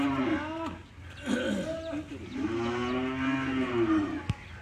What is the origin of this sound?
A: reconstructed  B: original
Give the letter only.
B